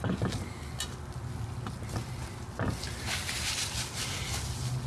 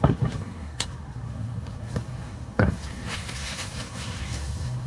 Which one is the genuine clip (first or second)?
first